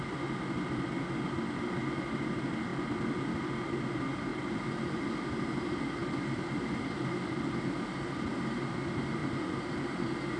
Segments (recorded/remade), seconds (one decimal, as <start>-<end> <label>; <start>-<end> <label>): 0.0-4.3 recorded; 4.3-5.1 remade; 5.1-10.4 recorded